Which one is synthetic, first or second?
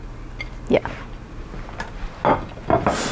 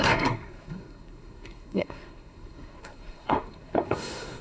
second